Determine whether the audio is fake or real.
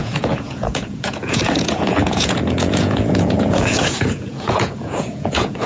fake